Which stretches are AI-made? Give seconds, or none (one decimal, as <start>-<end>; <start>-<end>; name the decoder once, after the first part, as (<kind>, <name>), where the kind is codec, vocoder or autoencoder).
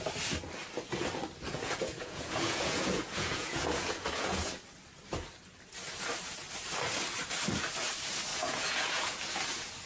1.5-4.6 (vocoder, Vocos); 8.3-9.2